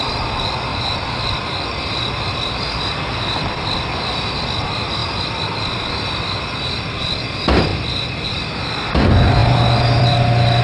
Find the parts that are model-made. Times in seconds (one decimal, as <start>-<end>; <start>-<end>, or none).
0.7-2.1; 7.7-8.3